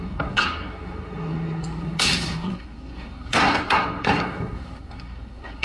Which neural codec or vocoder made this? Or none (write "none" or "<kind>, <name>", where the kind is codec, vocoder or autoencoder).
codec, SNAC